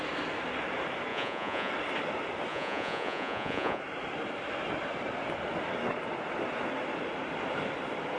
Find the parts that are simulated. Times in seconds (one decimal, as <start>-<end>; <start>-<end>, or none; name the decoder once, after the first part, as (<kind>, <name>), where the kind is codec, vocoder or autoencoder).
1.1-1.7 (vocoder, Vocos); 2.5-3.8